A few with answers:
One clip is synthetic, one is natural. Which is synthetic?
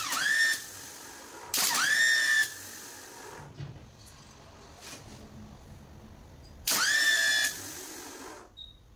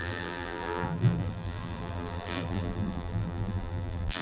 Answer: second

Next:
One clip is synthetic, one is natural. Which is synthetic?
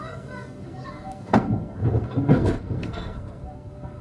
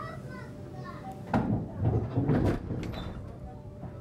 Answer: first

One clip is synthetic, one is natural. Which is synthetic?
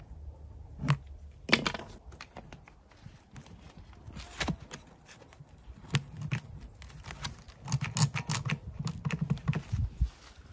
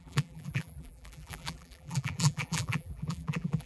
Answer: second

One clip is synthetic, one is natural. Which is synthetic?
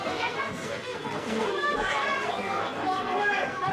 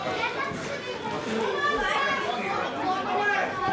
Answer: first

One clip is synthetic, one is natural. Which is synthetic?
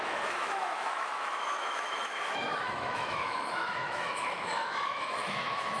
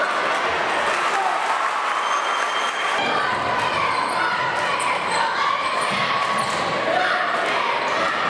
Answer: first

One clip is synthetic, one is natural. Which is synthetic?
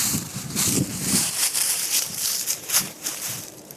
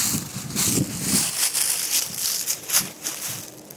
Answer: first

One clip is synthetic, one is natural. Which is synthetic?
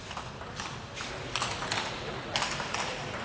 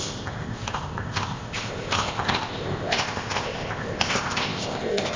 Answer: second